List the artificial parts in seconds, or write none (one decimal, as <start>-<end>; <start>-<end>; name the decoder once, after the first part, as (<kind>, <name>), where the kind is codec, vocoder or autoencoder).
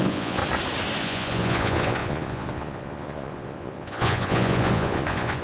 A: 0.0-0.4 (vocoder, Vocos); 1.0-5.4